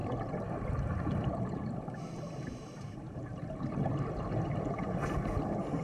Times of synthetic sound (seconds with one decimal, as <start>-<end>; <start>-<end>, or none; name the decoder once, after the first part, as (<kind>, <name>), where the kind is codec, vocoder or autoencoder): 0.0-3.5 (vocoder, BigVGAN v2)